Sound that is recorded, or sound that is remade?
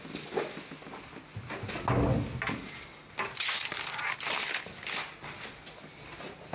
recorded